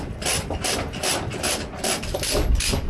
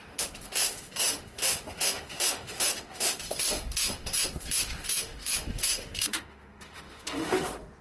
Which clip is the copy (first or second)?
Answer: second